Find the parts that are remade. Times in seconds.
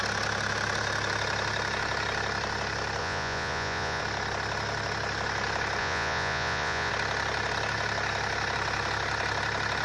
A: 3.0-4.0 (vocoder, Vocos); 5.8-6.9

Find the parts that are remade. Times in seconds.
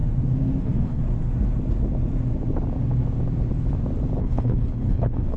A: 0.6-1.0 (codec, HILCodec); 4.2-5.4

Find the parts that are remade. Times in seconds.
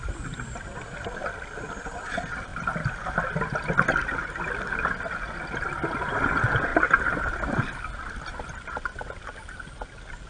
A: none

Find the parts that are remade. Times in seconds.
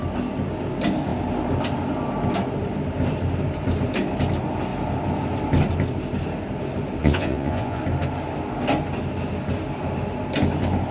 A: 7.0-7.8 (vocoder, Vocos)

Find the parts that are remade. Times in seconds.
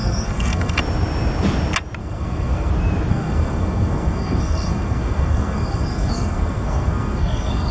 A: 0.0-0.8 (codec, SNAC); 2.0-2.7; 3.1-7.7